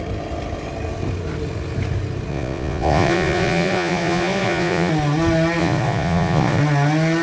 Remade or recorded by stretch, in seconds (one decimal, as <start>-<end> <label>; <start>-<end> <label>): 0.0-2.3 recorded; 2.3-4.9 remade; 4.9-5.6 recorded; 5.6-6.6 remade; 6.6-7.2 recorded